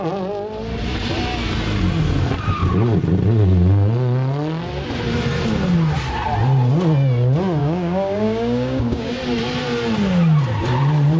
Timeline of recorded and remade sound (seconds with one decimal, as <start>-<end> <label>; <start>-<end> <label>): 0.0-7.6 recorded; 7.6-9.1 remade; 9.1-11.2 recorded